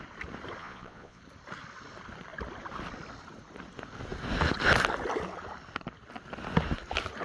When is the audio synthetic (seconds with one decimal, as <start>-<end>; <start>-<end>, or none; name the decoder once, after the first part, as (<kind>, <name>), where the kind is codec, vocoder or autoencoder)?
0.6-1.2 (vocoder, Vocos)